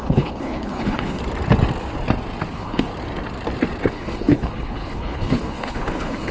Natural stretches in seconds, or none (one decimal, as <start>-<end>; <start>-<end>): 1.2-2.5; 2.9-3.9